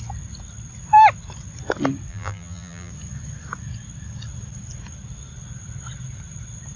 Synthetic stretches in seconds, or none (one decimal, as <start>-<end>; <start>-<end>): 2.1-2.9